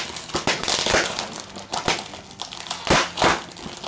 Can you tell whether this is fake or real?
real